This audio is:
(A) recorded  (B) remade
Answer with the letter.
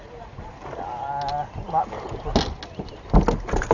A